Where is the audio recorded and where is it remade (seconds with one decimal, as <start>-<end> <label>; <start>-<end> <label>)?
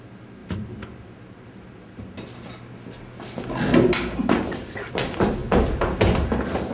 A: 0.0-6.7 recorded